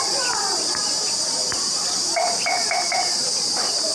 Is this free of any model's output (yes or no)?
no